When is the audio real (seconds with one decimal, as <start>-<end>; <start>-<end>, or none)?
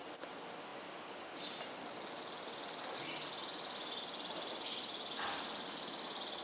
0.0-6.4